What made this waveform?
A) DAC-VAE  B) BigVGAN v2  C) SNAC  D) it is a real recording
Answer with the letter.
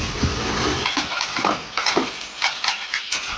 D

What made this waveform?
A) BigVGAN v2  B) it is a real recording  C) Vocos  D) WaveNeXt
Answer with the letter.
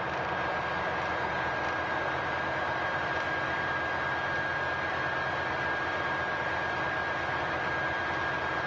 B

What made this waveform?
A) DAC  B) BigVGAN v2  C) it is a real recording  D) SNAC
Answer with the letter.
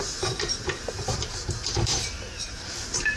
B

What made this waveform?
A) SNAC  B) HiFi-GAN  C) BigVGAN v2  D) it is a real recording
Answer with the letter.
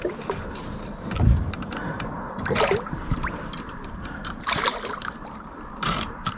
C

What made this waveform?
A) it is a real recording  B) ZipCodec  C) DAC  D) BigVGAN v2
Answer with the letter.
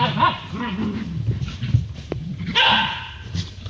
D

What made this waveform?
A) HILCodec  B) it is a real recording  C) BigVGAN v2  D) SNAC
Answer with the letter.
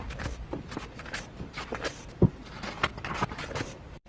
C